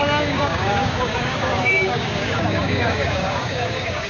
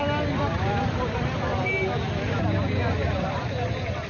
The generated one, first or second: first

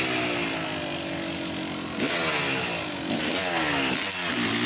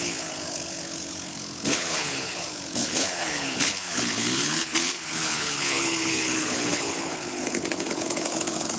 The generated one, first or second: second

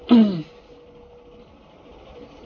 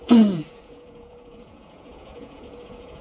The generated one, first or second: second